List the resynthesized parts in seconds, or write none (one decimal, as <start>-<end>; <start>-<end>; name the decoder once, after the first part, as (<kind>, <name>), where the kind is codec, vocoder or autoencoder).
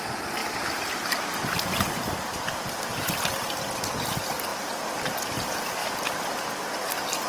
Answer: 0.4-3.6 (vocoder, BigVGAN v2); 5.8-6.6